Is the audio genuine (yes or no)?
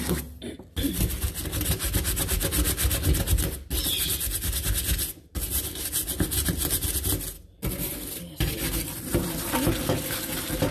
yes